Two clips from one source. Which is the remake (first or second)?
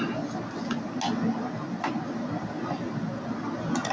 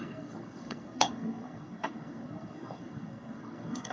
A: second